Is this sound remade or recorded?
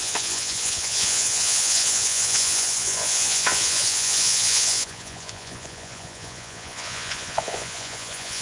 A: remade